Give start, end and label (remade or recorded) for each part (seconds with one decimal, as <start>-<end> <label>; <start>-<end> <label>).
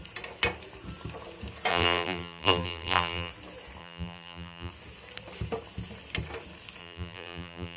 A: 0.0-1.7 recorded; 1.7-3.3 remade; 3.3-3.8 recorded; 3.8-4.7 remade; 4.7-6.8 recorded; 6.8-7.8 remade